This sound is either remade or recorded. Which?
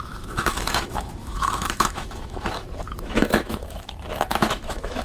remade